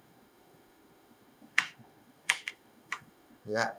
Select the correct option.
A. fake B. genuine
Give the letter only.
A